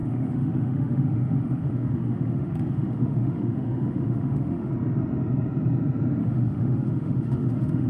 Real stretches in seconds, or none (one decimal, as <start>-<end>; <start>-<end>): 4.7-6.2